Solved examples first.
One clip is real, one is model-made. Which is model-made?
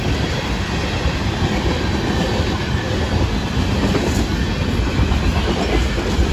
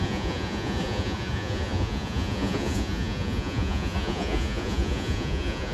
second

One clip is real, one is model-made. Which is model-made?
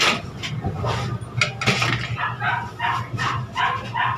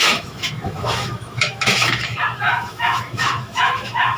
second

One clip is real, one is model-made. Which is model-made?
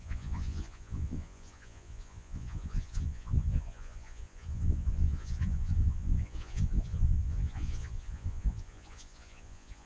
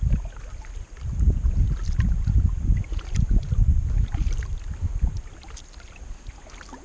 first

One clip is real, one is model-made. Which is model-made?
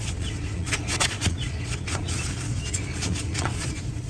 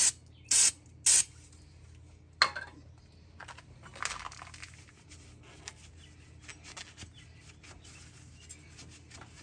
first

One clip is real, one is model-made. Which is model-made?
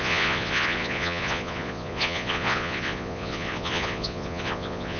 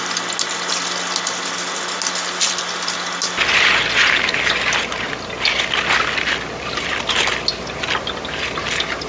first